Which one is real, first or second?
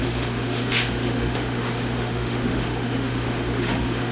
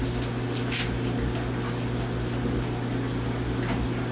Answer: second